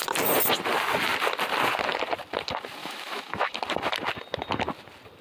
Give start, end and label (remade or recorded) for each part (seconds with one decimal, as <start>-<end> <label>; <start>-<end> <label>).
0.0-2.8 recorded; 2.8-3.5 remade; 3.5-5.2 recorded